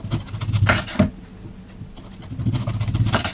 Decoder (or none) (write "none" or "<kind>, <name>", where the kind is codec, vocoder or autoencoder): none